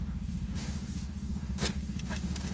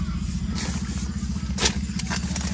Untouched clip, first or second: second